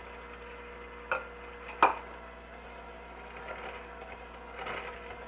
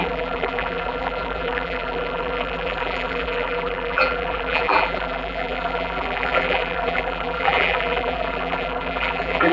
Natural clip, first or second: first